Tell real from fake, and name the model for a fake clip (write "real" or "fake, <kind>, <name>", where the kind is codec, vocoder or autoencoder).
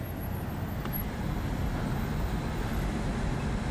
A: real